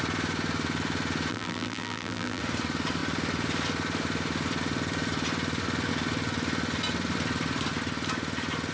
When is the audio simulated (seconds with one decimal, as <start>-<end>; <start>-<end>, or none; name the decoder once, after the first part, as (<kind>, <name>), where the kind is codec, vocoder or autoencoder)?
1.3-2.4 (vocoder, BigVGAN v2)